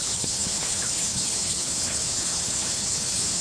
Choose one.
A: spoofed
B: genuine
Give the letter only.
A